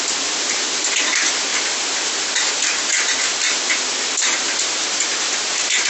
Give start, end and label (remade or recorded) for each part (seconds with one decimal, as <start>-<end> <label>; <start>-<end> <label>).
0.0-5.9 recorded